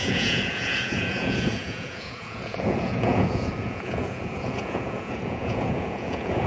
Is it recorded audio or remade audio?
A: remade